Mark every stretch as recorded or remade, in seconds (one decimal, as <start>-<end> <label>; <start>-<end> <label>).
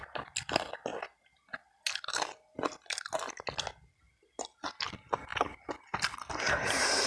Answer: 0.0-7.1 recorded